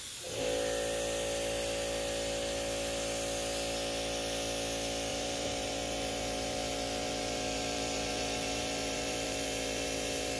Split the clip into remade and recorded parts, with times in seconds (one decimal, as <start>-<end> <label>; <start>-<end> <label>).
0.0-5.1 recorded; 5.1-10.4 remade